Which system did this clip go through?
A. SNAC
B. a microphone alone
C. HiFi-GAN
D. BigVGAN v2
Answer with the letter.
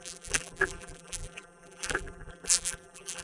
D